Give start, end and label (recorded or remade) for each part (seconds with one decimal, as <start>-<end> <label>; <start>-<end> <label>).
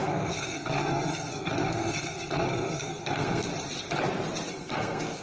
0.0-3.5 remade; 3.5-4.5 recorded; 4.5-5.2 remade